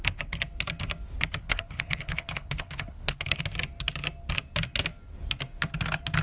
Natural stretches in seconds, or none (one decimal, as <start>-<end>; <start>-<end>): 0.0-1.4; 3.4-6.2